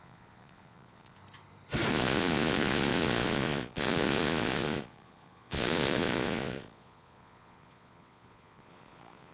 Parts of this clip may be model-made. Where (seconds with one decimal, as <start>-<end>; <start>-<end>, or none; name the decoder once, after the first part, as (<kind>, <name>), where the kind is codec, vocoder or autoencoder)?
0.0-1.2 (vocoder, Vocos); 1.9-9.3